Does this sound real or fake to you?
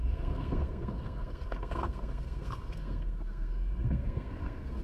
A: fake